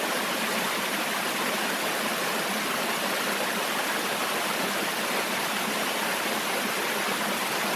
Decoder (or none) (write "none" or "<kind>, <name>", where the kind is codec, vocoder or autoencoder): none